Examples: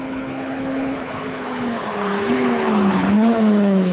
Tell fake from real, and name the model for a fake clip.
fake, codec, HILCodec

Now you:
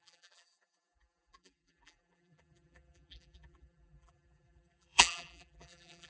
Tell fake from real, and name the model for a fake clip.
fake, vocoder, BigVGAN v2